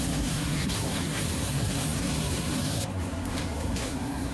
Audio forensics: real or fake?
fake